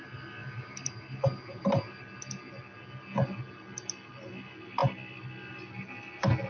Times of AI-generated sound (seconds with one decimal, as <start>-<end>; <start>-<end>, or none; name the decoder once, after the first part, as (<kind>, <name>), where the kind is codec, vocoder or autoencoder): none